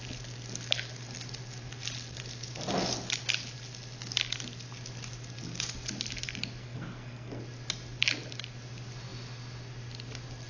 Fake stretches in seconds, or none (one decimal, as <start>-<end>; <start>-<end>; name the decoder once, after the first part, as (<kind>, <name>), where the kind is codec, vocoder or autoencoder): 6.6-7.4 (codec, SNAC)

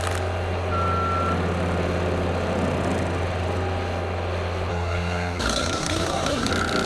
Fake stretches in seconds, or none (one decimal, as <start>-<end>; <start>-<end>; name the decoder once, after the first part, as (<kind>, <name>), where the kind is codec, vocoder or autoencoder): 4.7-6.5 (codec, SNAC)

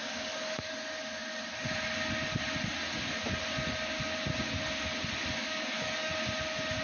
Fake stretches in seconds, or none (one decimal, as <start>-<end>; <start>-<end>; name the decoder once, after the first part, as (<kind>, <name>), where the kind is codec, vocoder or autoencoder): 0.0-0.7 (codec, DAC); 5.4-6.1

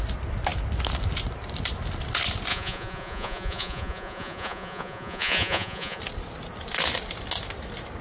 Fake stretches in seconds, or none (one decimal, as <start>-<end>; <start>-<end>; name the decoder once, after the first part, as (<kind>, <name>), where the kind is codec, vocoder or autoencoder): 2.5-6.0 (vocoder, Vocos)

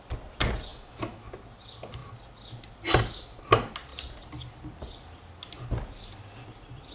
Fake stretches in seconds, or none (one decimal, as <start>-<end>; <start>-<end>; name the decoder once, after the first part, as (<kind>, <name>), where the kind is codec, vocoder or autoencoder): 0.7-1.3 (autoencoder, DAC-VAE)

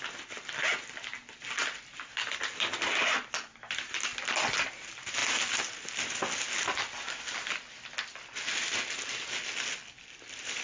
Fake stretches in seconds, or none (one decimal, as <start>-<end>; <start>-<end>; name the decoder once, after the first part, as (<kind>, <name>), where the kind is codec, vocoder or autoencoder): none

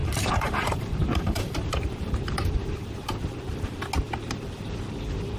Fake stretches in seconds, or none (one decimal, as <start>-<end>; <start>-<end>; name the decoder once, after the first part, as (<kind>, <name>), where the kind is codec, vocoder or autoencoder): 0.0-3.2 (vocoder, BigVGAN v2)

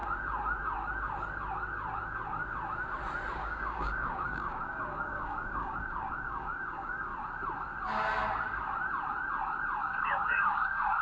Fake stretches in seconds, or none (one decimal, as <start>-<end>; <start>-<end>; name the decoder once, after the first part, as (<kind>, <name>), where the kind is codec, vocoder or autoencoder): 3.3-7.1 (codec, DAC); 9.8-11.0